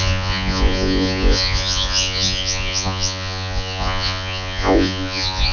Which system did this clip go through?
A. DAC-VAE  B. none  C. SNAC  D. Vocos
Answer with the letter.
D